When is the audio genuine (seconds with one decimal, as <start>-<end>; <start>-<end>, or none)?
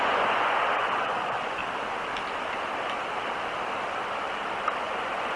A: 1.6-4.8